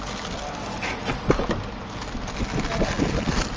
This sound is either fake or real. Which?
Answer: real